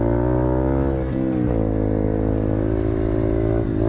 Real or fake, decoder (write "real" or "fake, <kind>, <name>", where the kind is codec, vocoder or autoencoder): real